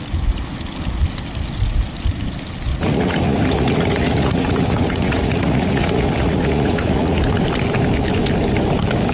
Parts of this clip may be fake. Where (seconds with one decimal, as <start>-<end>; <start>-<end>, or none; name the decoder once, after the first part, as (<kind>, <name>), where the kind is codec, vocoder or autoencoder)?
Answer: 2.7-7.2 (vocoder, Vocos)